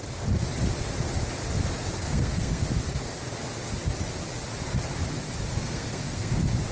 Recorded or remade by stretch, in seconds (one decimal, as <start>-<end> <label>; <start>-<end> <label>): 0.0-2.0 recorded; 2.0-2.6 remade; 2.6-5.5 recorded; 5.5-6.3 remade; 6.3-6.7 recorded